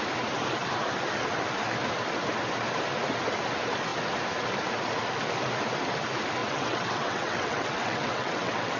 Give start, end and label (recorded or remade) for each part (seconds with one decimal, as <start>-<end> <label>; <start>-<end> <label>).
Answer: 0.0-6.4 recorded; 6.4-8.8 remade

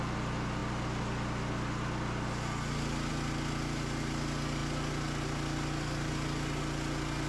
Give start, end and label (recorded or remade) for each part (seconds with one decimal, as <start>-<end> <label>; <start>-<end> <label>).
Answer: 0.0-7.3 recorded